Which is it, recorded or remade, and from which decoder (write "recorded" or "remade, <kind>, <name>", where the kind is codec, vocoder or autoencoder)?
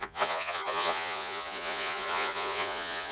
remade, vocoder, Vocos